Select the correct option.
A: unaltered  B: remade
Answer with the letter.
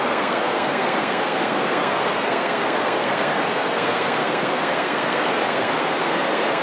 B